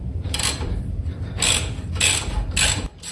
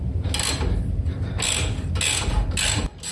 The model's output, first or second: first